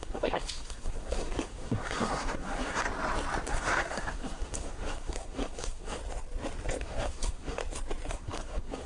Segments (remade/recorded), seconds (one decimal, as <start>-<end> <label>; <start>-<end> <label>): 0.0-2.8 remade; 2.8-3.5 recorded; 3.5-6.0 remade; 6.0-6.8 recorded; 6.8-7.6 remade; 7.6-8.1 recorded; 8.1-8.9 remade